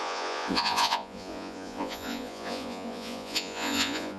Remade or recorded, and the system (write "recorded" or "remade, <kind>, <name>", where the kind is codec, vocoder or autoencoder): remade, vocoder, Vocos